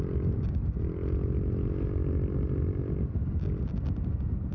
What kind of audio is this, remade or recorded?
recorded